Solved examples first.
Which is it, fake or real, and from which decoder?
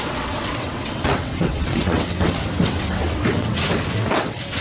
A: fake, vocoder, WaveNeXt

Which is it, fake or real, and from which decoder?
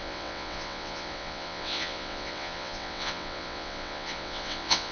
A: fake, vocoder, WaveNeXt